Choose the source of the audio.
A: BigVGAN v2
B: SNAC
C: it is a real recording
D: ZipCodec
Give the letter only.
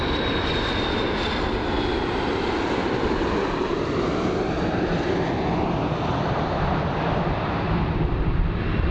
C